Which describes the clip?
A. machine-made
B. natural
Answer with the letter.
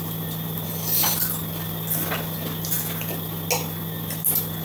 B